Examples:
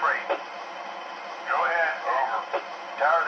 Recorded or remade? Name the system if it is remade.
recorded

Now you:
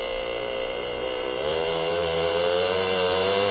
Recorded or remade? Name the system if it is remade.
remade, vocoder, BigVGAN v2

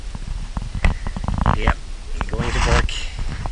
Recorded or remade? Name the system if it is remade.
remade, vocoder, BigVGAN v2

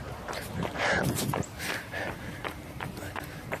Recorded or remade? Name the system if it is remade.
remade, vocoder, BigVGAN v2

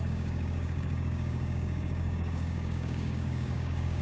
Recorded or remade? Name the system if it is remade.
remade, codec, DAC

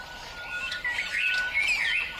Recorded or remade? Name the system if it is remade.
recorded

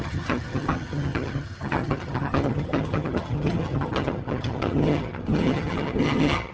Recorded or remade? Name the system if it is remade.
remade, vocoder, HiFi-GAN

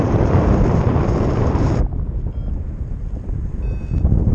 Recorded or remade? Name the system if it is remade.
remade, vocoder, BigVGAN v2